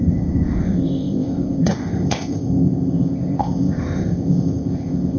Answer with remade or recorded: remade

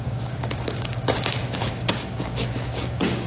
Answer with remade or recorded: remade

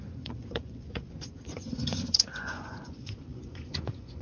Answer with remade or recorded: remade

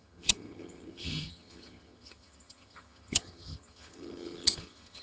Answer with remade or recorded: remade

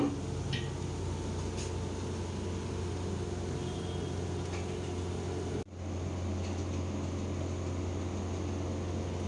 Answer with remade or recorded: recorded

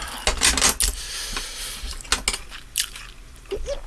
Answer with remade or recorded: recorded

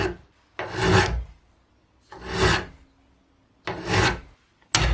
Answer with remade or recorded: recorded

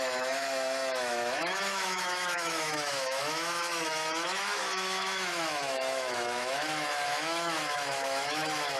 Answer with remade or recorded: remade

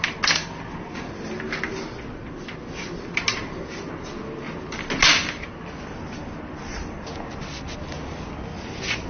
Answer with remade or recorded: recorded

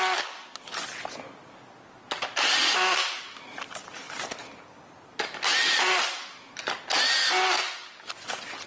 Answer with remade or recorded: recorded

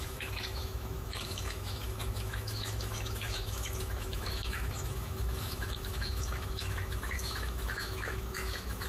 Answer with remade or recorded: remade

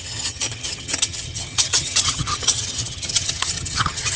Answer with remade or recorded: remade